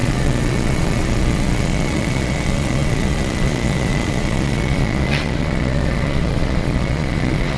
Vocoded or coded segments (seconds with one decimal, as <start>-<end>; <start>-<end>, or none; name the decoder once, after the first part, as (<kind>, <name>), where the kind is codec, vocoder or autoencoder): 0.0-7.6 (vocoder, Vocos)